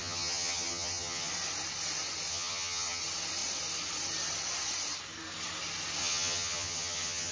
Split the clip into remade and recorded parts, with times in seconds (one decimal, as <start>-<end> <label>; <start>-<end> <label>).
0.0-1.3 remade; 1.3-2.3 recorded; 2.3-3.0 remade; 3.0-6.0 recorded; 6.0-7.3 remade